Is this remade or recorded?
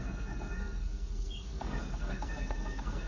remade